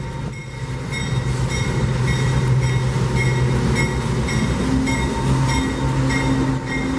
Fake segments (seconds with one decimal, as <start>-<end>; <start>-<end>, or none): none